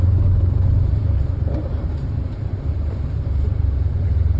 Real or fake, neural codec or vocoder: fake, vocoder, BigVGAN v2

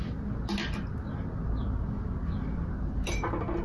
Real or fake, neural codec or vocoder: real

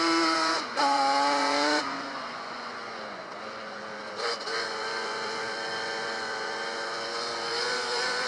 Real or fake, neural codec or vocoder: fake, vocoder, Vocos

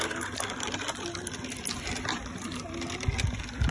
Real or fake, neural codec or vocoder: real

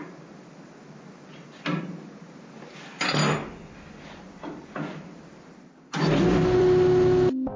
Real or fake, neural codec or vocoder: real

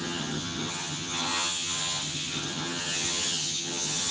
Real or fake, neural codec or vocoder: fake, vocoder, HiFi-GAN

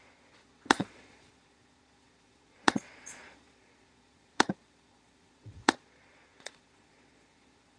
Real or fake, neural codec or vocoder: fake, vocoder, Vocos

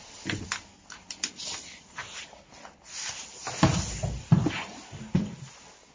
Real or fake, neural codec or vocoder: real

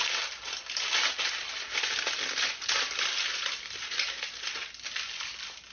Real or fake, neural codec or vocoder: real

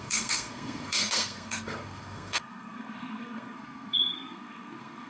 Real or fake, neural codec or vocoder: fake, codec, SNAC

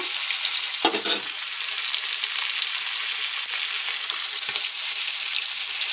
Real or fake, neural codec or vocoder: real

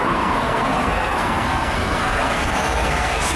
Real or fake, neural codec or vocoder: fake, codec, SNAC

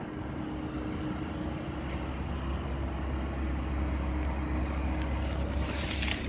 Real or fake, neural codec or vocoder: real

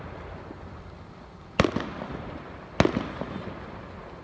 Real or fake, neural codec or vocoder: real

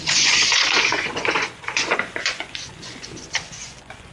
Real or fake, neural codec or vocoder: fake, vocoder, Vocos